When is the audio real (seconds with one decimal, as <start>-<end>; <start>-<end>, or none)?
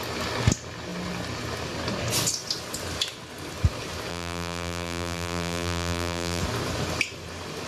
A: 0.0-4.1; 6.4-7.7